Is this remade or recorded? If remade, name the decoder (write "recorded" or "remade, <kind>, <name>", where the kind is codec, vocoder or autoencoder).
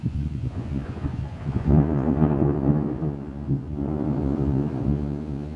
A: remade, vocoder, Vocos